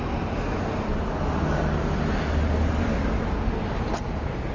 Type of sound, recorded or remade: recorded